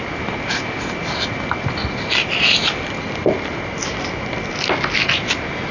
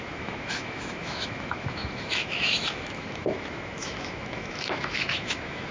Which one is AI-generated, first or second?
second